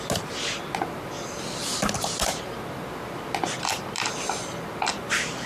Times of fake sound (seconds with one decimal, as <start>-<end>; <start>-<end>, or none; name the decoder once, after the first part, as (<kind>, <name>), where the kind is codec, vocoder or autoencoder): none